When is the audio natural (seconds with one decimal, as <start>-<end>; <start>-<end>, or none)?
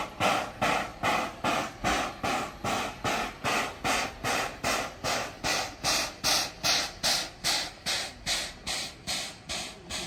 0.0-10.1